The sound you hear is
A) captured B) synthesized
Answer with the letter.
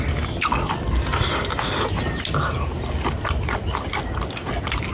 A